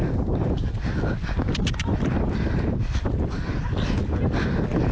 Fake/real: real